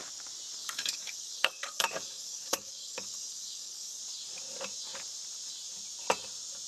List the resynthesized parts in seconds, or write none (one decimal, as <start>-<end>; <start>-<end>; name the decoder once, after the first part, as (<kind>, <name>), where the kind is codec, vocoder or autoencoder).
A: 0.6-4.0 (codec, DAC)